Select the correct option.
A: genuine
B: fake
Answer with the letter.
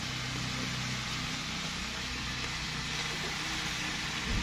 A